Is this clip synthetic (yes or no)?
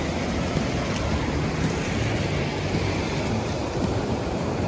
no